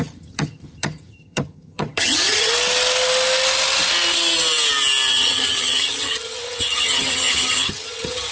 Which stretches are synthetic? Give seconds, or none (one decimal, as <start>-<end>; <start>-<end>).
0.0-2.5; 5.1-8.3